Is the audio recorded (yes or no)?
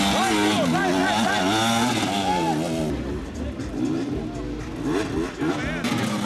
yes